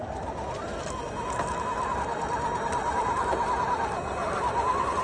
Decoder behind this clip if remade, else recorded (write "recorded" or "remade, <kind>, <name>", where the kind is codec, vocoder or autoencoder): recorded